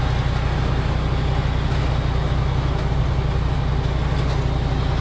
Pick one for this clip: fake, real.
real